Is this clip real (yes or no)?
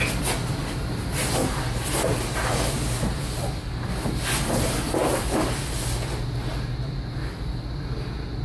yes